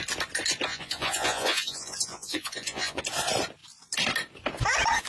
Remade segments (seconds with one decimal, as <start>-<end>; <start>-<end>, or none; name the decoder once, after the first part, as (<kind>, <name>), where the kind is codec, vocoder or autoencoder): 0.7-3.0 (vocoder, Vocos)